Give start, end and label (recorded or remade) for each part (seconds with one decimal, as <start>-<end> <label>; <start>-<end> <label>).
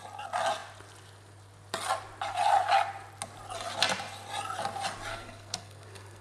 0.0-5.1 recorded; 5.1-6.2 remade